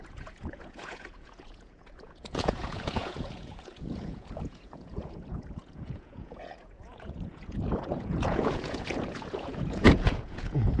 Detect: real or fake fake